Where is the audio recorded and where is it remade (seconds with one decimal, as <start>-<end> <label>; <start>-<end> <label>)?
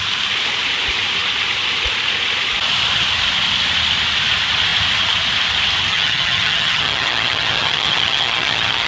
0.0-5.9 recorded; 5.9-8.9 remade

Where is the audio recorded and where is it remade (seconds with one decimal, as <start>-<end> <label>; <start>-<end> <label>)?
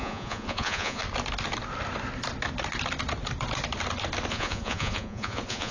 0.0-1.0 remade; 1.0-4.3 recorded; 4.3-5.7 remade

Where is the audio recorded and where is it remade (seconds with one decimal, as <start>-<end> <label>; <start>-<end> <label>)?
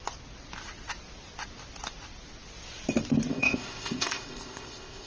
0.0-3.3 recorded; 3.3-5.1 remade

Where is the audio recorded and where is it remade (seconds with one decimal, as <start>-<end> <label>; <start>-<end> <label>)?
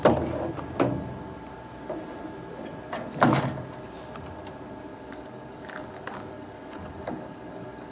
0.0-4.9 recorded; 4.9-7.9 remade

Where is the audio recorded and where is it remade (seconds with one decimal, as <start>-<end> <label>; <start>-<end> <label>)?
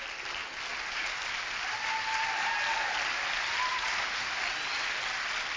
0.0-3.7 recorded; 3.7-4.4 remade; 4.4-5.6 recorded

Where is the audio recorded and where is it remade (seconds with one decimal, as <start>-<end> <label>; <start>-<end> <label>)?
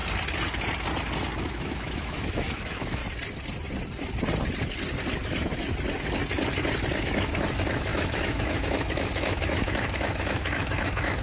0.0-1.4 recorded; 1.4-3.0 remade; 3.0-7.0 recorded; 7.0-11.2 remade